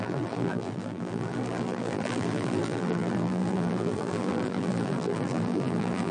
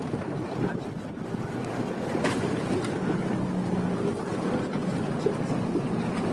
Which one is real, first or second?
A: second